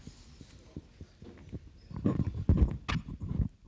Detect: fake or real real